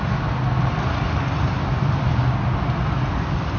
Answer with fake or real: real